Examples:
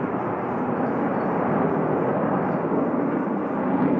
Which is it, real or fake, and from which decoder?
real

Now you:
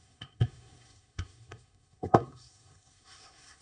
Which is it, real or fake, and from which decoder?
fake, codec, SNAC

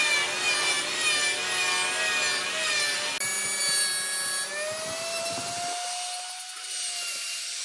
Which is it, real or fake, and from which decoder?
real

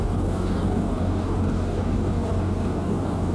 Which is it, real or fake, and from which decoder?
fake, codec, DAC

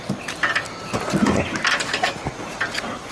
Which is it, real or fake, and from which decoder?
real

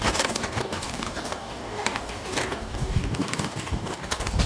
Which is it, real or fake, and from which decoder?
fake, codec, DAC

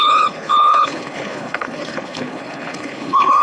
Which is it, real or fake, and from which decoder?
fake, codec, HILCodec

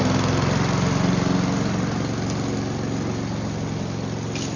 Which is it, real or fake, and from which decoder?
real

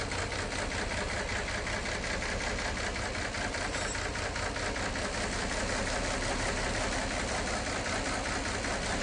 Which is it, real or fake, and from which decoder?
real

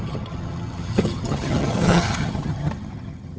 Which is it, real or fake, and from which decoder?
fake, vocoder, HiFi-GAN